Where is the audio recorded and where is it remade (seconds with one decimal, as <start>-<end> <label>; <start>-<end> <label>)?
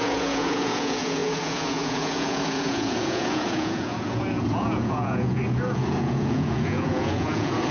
0.0-7.7 remade